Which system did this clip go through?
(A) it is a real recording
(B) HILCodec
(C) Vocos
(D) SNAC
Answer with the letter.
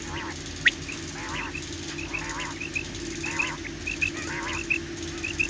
A